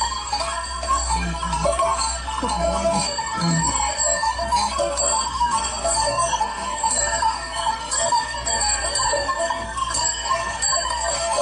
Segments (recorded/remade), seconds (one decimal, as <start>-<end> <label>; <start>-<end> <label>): 0.0-11.4 remade